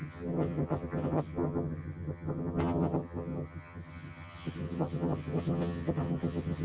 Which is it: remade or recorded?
remade